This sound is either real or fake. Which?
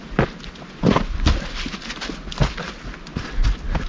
real